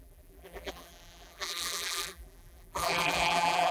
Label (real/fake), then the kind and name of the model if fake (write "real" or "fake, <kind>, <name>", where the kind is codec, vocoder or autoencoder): fake, vocoder, BigVGAN v2